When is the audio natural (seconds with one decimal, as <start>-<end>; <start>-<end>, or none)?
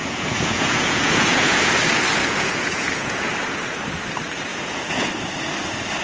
1.7-2.2; 3.3-4.5; 5.1-6.0